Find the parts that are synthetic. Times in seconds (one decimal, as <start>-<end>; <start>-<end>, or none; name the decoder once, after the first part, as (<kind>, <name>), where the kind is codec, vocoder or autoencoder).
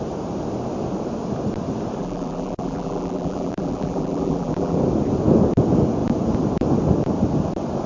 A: 2.0-4.8 (vocoder, BigVGAN v2)